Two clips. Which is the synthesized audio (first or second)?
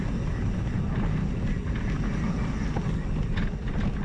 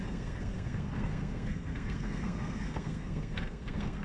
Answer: second